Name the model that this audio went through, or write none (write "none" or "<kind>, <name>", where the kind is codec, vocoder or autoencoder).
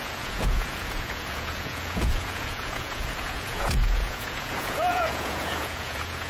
vocoder, Vocos